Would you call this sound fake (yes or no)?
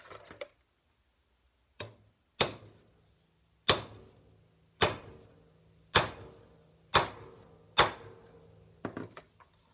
no